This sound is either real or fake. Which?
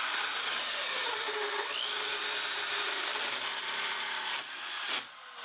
real